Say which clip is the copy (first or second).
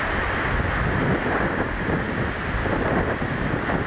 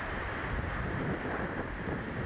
second